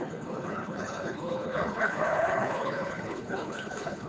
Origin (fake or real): fake